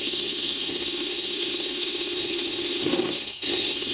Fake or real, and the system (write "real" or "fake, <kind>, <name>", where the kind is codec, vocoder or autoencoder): fake, codec, SNAC